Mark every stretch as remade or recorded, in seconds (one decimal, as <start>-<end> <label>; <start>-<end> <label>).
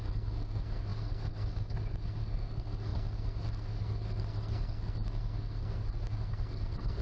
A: 0.0-7.0 remade